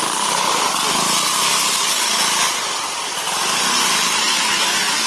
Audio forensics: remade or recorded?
recorded